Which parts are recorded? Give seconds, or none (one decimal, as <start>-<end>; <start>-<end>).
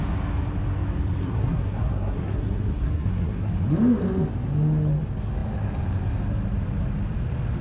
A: 0.0-1.2; 3.5-7.6